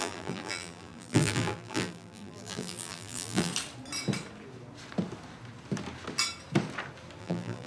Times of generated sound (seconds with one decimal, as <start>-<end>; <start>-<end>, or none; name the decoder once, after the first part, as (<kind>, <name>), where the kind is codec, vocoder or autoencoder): 0.0-3.5 (vocoder, BigVGAN v2); 7.2-7.7